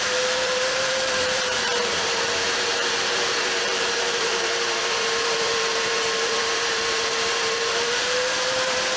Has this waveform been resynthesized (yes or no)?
yes